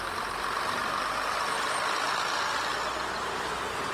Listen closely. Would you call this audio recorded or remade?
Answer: recorded